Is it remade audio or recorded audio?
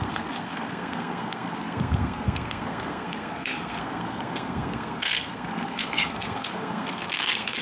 remade